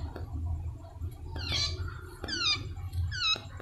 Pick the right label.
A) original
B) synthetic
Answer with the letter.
A